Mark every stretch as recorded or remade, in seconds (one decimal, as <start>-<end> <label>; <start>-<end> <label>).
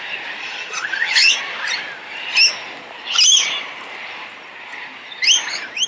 0.0-0.4 recorded; 0.4-1.3 remade; 1.3-5.9 recorded